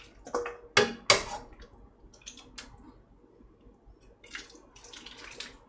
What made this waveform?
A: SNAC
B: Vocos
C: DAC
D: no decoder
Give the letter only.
D